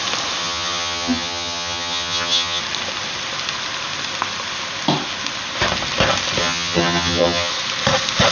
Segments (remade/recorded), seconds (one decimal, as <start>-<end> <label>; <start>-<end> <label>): 0.0-0.4 recorded; 0.4-2.6 remade; 2.6-6.4 recorded; 6.4-7.5 remade; 7.5-8.3 recorded

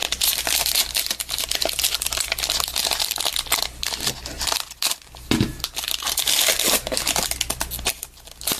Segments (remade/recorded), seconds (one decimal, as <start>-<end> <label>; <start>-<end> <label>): 0.0-8.6 recorded

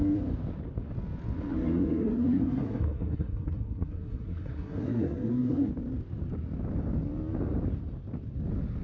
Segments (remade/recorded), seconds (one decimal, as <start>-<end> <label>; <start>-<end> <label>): 0.0-1.5 recorded; 1.5-5.7 remade; 5.7-8.8 recorded

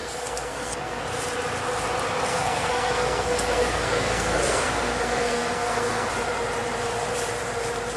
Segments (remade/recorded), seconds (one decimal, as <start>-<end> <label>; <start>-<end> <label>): 0.0-1.0 remade; 1.0-2.3 recorded; 2.3-6.1 remade; 6.1-8.0 recorded

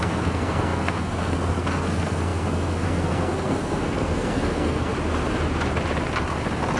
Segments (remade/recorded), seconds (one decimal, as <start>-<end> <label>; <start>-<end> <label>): 0.0-4.9 remade; 4.9-6.8 recorded

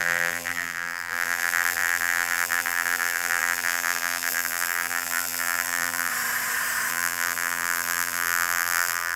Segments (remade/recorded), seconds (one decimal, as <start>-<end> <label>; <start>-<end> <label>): 0.0-6.1 remade; 6.1-6.9 recorded; 6.9-9.2 remade

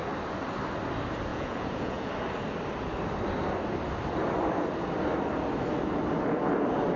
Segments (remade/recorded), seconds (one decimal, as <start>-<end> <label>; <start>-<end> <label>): 0.0-1.3 recorded; 1.3-2.1 remade; 2.1-7.0 recorded